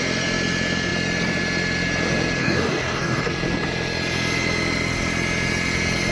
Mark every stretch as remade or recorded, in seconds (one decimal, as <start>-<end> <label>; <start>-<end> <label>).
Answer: 0.0-2.4 recorded; 2.4-3.3 remade; 3.3-6.1 recorded